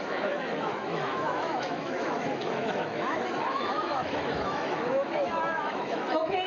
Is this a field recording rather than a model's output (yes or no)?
no